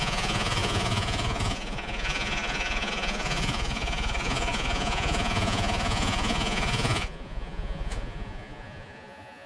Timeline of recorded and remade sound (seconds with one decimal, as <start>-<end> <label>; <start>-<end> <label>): 0.0-9.5 remade